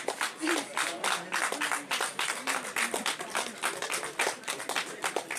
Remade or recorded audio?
remade